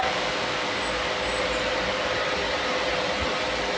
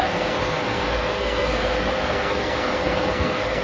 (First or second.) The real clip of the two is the first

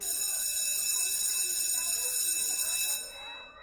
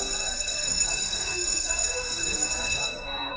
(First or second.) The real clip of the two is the first